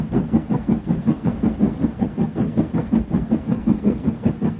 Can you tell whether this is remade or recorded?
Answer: remade